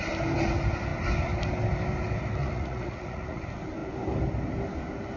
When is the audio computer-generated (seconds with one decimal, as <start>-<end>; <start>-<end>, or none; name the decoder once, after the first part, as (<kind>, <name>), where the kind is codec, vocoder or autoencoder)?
2.4-3.4 (vocoder, Vocos)